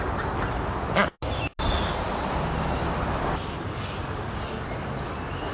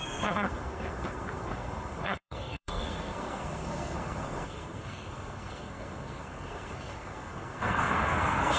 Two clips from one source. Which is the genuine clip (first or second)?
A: first